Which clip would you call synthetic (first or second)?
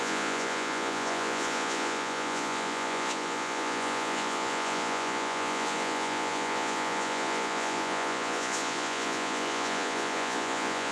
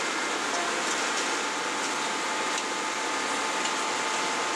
first